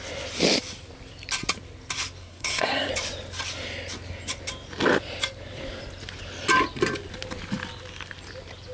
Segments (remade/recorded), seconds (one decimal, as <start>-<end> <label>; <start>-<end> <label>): 0.0-2.2 recorded; 2.2-2.9 remade; 2.9-8.7 recorded